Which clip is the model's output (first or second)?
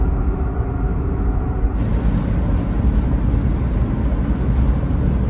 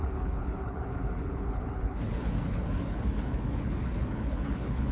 second